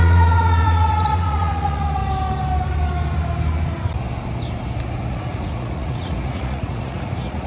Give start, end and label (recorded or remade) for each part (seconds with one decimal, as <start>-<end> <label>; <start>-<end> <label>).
0.0-2.0 remade; 2.0-5.1 recorded; 5.1-7.5 remade